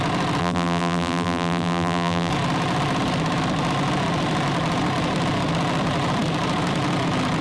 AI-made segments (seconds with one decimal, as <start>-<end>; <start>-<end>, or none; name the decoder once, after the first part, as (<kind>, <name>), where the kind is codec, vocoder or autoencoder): 0.4-2.3 (vocoder, BigVGAN v2)

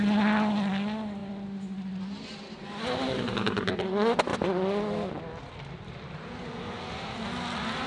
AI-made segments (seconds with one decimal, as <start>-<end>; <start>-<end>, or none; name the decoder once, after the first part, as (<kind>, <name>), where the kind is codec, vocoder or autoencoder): none

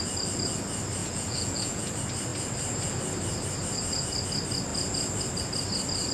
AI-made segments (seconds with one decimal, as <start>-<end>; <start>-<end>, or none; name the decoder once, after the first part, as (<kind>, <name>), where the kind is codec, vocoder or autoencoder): 1.0-1.9 (vocoder, Vocos)

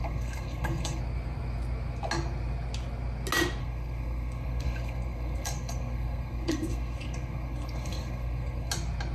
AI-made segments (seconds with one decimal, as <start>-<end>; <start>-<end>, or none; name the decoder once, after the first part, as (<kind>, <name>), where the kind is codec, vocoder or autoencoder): 0.0-1.0 (codec, SNAC); 3.6-8.7

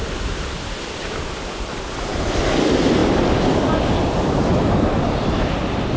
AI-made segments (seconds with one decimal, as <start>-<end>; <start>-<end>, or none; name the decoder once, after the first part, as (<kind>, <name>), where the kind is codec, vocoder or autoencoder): 0.0-2.1 (vocoder, BigVGAN v2); 2.6-6.0

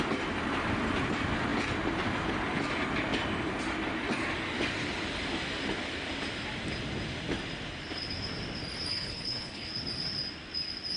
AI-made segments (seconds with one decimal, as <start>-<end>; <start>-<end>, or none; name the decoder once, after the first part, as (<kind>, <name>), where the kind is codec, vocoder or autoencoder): 8.9-9.7 (codec, HILCodec)

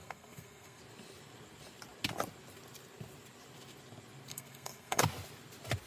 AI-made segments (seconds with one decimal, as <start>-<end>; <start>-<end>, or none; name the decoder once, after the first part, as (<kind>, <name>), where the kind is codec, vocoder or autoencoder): 0.0-0.8 (codec, SNAC); 4.3-5.0